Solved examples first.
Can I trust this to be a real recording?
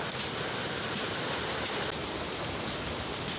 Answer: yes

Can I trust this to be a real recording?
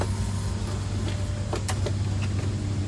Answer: yes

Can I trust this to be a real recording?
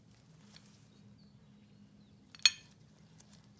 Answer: yes